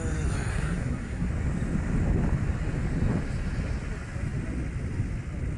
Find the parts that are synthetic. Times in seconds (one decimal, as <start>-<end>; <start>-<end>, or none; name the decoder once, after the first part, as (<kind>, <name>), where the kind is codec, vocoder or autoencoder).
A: 0.5-1.3 (codec, SNAC)